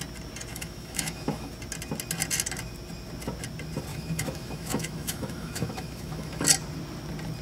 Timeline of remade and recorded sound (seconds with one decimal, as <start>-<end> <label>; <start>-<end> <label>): 0.0-0.5 recorded; 0.5-1.5 remade; 1.5-3.9 recorded; 3.9-6.4 remade; 6.4-7.4 recorded